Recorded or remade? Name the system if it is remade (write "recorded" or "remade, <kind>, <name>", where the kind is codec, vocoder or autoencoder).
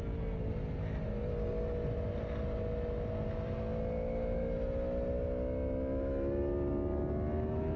recorded